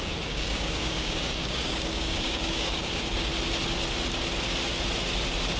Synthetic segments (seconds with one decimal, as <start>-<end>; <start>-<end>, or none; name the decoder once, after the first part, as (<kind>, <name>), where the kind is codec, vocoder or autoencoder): 0.0-3.3 (codec, DAC)